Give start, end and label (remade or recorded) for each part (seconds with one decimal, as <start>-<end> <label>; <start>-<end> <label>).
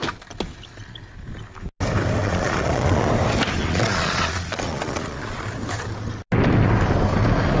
0.0-2.2 recorded; 2.2-3.1 remade; 3.1-3.6 recorded; 3.6-5.4 remade; 5.4-7.6 recorded